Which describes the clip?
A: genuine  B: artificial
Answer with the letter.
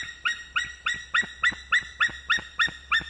A